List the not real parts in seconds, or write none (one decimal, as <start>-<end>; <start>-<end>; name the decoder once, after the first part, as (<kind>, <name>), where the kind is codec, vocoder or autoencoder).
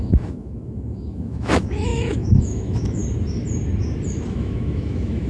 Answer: 0.0-3.0 (autoencoder, DAC-VAE); 4.3-5.3